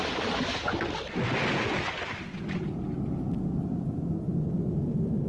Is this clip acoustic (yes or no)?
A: yes